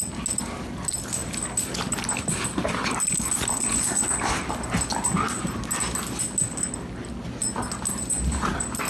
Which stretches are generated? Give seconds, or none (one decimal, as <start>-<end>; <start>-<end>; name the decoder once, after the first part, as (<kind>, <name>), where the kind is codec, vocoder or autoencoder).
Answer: none